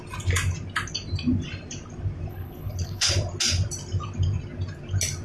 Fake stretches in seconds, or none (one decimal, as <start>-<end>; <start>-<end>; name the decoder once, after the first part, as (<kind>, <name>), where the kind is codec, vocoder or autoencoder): 2.3-3.1 (codec, HILCodec)